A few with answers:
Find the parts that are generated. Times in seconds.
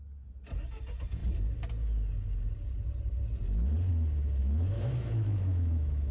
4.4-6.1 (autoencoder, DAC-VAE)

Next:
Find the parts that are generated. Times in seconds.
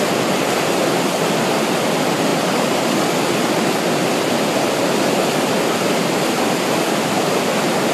none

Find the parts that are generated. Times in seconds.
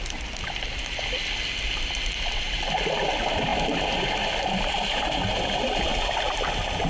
none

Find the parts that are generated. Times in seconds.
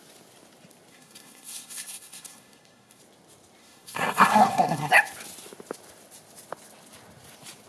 0.9-3.0 (codec, SNAC); 3.6-4.9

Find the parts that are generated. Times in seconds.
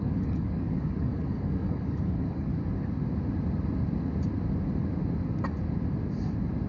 0.0-2.5 (codec, DAC)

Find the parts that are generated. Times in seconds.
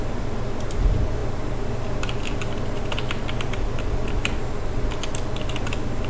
none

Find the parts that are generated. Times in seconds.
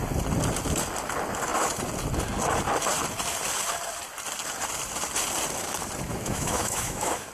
6.1-7.3 (autoencoder, DAC-VAE)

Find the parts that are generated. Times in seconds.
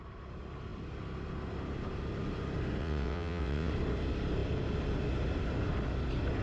2.8-3.7 (vocoder, WaveNeXt)